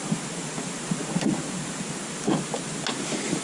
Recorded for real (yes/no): yes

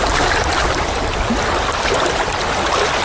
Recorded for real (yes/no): yes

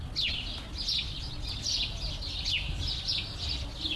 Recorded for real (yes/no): yes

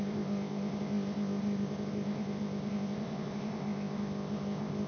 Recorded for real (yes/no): no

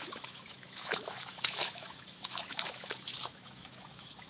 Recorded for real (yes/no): no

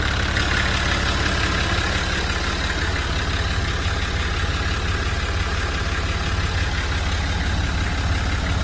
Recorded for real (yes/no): yes